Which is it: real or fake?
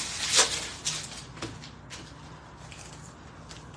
real